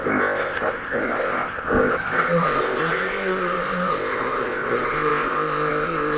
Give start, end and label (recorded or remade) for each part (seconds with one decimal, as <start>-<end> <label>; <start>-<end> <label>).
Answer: 0.0-6.2 remade